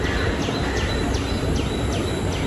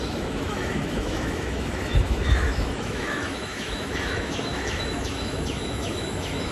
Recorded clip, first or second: first